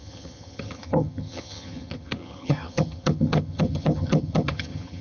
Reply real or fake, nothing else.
fake